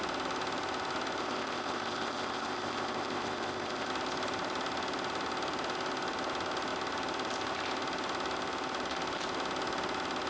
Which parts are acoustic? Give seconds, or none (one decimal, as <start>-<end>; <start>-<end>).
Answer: 0.0-1.2; 3.9-10.3